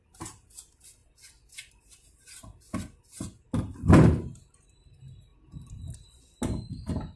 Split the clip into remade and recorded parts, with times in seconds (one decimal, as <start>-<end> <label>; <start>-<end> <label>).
0.0-1.0 recorded; 1.0-1.7 remade; 1.7-7.2 recorded